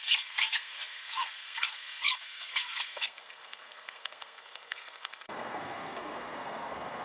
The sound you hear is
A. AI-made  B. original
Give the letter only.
A